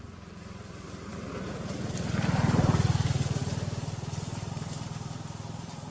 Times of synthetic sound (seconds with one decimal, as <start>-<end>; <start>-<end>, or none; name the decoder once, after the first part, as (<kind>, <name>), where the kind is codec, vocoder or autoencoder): none